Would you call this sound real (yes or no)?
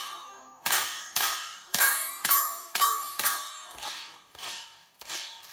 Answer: no